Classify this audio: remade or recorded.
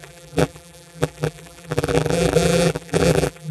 remade